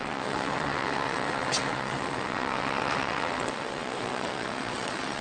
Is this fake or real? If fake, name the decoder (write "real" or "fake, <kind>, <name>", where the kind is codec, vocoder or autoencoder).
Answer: fake, vocoder, WaveNeXt